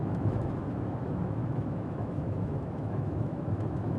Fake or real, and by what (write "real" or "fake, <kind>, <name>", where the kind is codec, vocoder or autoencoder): fake, autoencoder, DAC-VAE